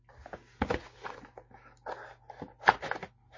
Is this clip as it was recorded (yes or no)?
yes